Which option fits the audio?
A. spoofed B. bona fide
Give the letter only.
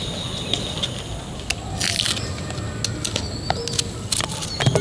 B